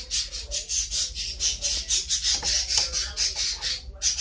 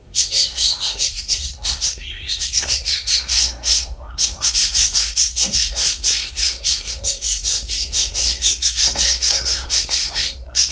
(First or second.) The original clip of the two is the first